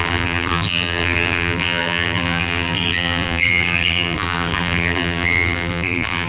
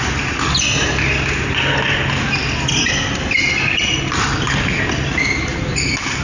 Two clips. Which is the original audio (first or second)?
second